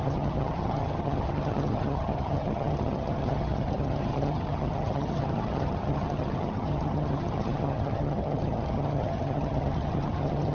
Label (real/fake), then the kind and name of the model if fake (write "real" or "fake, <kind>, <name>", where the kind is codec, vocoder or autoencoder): fake, vocoder, HiFi-GAN